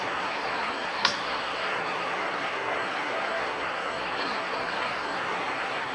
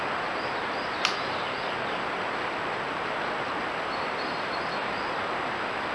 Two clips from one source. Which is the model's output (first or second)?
first